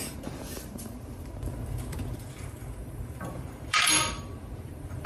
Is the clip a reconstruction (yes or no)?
yes